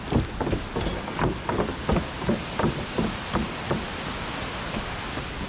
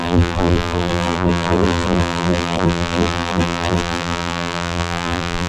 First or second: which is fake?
second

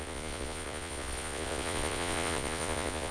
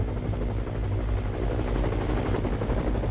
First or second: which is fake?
first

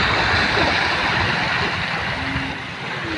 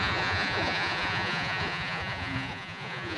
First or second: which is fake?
second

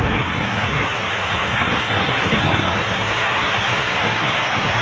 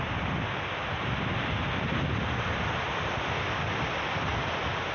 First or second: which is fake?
first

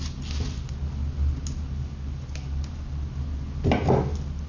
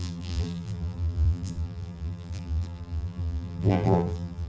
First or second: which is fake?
second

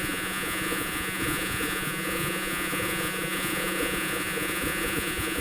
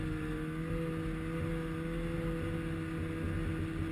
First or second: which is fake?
first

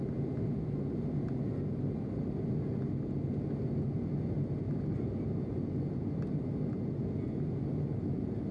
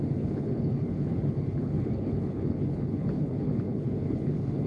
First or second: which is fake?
second